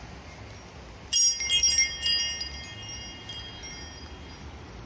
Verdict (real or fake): real